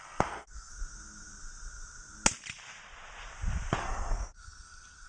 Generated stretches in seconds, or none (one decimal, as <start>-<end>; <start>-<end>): 0.0-0.7; 3.8-5.1